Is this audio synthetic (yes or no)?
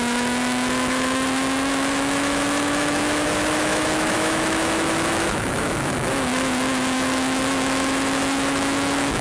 yes